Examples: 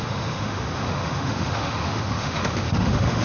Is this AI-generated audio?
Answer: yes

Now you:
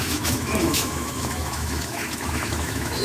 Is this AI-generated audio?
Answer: yes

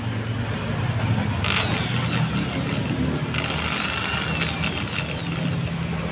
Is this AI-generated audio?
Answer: no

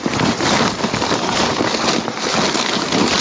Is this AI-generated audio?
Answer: no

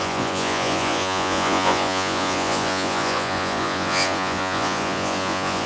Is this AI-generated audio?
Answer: yes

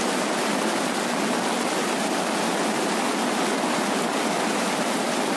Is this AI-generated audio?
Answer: no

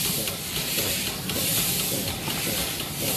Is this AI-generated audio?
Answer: no